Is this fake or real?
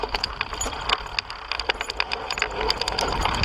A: fake